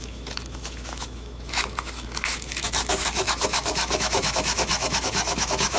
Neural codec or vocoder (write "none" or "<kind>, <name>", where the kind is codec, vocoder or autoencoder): autoencoder, DAC-VAE